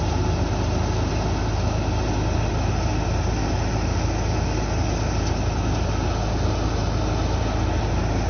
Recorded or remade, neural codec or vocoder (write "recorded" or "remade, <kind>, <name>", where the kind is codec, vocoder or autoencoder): recorded